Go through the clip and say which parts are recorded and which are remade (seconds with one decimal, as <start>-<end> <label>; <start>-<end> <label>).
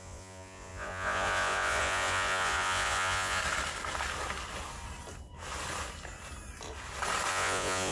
0.0-3.4 remade; 3.4-7.3 recorded; 7.3-7.9 remade